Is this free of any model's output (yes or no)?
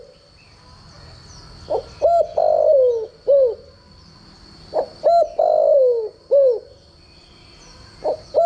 yes